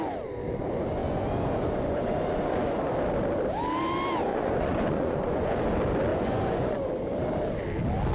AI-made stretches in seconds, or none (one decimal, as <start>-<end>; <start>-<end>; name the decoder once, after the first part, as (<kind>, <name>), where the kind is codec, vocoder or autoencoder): 1.0-2.8 (vocoder, Vocos); 4.3-5.6; 6.1-6.9